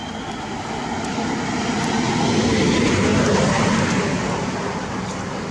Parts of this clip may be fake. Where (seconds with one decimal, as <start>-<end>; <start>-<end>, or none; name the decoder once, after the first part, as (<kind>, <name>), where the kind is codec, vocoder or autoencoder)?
none